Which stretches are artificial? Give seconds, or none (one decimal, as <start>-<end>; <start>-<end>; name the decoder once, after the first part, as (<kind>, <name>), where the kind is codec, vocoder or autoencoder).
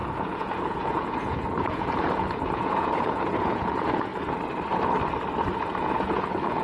0.0-4.1 (vocoder, Vocos); 5.8-6.6